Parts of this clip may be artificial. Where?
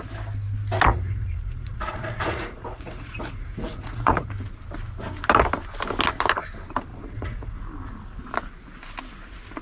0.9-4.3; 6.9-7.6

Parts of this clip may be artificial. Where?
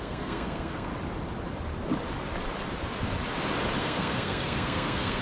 0.0-0.9; 3.8-5.2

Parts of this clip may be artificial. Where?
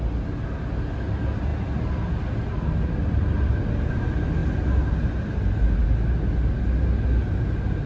none